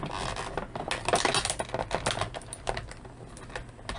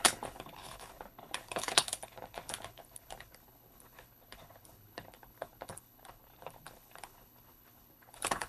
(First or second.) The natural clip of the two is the first